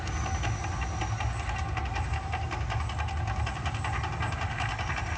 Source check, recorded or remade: recorded